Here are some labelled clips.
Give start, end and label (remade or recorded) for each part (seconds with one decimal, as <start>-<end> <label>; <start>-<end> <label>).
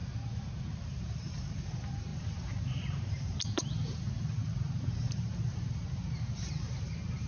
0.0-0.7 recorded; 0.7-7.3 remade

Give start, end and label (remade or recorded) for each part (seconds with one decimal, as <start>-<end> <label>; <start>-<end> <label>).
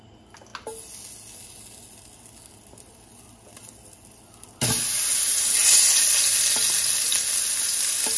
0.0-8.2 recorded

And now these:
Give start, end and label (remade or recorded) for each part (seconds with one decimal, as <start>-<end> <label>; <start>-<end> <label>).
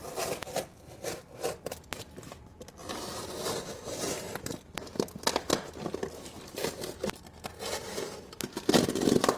0.0-4.9 remade; 4.9-7.6 recorded; 7.6-9.4 remade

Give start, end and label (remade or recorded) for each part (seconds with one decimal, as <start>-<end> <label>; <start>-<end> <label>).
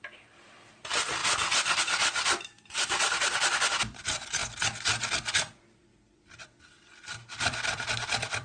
0.0-4.4 remade; 4.4-5.2 recorded; 5.2-8.4 remade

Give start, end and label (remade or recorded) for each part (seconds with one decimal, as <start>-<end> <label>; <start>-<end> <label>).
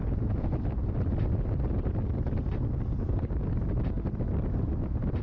0.0-0.5 remade; 0.5-5.2 recorded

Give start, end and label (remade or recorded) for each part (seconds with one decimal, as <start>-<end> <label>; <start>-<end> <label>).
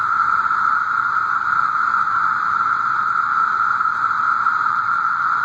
0.0-2.7 recorded; 2.7-3.3 remade; 3.3-4.7 recorded; 4.7-5.4 remade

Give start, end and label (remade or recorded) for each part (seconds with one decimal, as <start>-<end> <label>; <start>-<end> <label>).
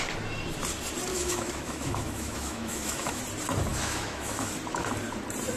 0.0-1.1 recorded; 1.1-3.2 remade; 3.2-3.7 recorded; 3.7-4.5 remade; 4.5-5.6 recorded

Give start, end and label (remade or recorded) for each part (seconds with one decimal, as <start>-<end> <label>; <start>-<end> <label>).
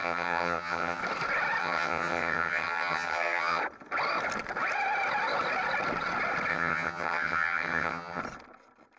0.0-1.0 remade; 1.0-1.6 recorded; 1.6-3.6 remade; 3.6-6.5 recorded; 6.5-8.2 remade; 8.2-9.0 recorded